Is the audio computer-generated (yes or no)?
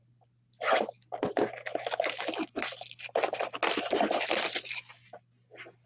no